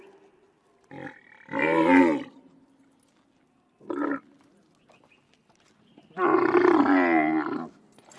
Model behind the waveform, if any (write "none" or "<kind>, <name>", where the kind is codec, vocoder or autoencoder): none